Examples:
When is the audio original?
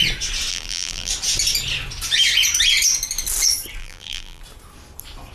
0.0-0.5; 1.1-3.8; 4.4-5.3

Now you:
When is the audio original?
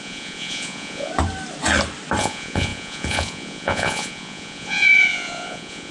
1.1-2.2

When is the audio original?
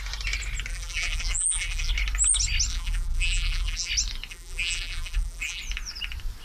0.0-0.7; 1.9-2.7; 3.9-4.3; 5.6-6.4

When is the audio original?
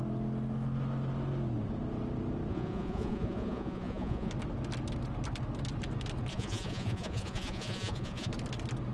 0.0-2.5; 4.3-6.3; 8.3-8.9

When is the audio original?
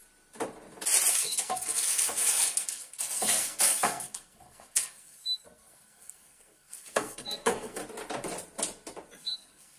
0.0-1.1; 7.8-9.2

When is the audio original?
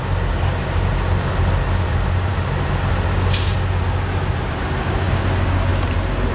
0.0-6.3